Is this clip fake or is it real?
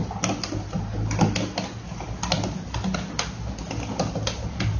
real